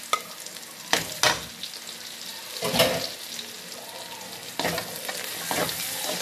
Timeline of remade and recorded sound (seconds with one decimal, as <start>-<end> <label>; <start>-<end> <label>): 0.0-6.2 recorded

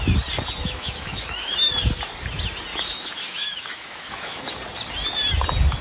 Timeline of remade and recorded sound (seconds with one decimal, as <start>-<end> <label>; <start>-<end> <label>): 0.0-0.6 recorded; 0.6-1.7 remade; 1.7-2.7 recorded; 2.7-4.5 remade; 4.5-5.8 recorded

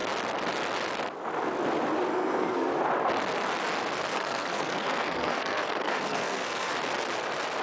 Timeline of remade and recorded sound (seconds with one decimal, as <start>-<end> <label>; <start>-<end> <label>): 0.0-2.1 recorded; 2.1-2.7 remade; 2.7-4.1 recorded; 4.1-6.7 remade; 6.7-7.6 recorded

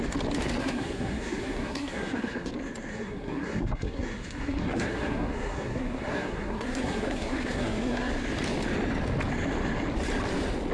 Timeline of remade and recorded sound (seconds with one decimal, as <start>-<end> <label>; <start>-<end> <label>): 0.0-0.6 recorded; 0.6-2.5 remade; 2.5-2.9 recorded; 2.9-8.1 remade; 8.1-10.7 recorded